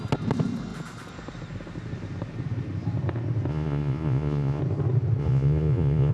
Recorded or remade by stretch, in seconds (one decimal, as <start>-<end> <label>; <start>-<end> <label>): 0.0-3.5 recorded; 3.5-4.6 remade; 4.6-5.2 recorded; 5.2-6.1 remade